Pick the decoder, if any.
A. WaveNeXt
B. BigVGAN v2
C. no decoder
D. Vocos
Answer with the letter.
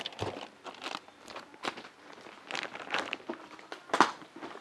C